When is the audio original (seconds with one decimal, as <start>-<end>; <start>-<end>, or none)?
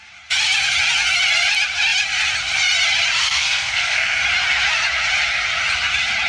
0.0-3.2; 4.2-6.3